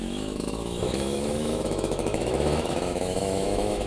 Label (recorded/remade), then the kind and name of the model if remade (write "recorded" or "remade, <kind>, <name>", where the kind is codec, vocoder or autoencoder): remade, autoencoder, DAC-VAE